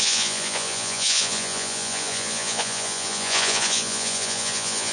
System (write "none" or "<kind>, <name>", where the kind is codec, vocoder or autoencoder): vocoder, Vocos